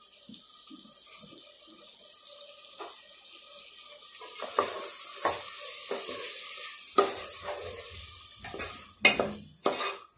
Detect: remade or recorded recorded